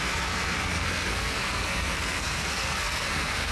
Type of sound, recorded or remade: remade